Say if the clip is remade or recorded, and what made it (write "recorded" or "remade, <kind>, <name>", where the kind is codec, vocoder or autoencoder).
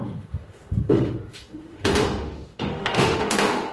remade, autoencoder, DAC-VAE